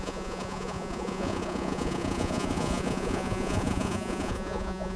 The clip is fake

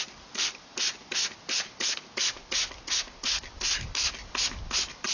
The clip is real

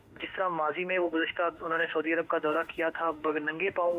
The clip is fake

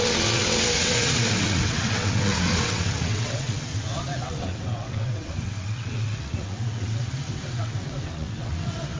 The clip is fake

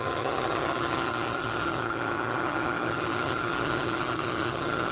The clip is fake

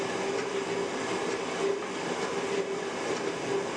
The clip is real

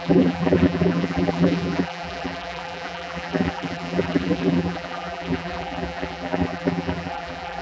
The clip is fake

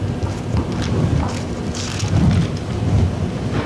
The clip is real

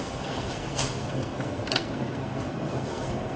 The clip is fake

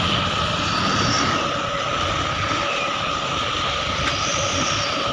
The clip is real